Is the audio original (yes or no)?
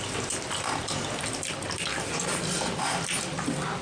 yes